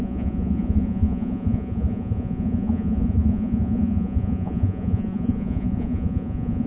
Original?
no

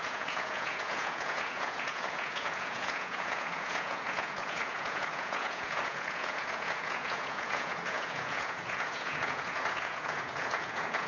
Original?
no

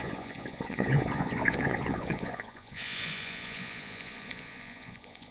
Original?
no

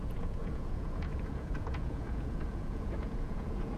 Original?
no